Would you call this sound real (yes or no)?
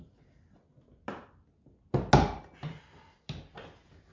yes